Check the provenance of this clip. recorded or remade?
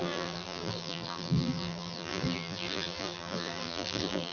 remade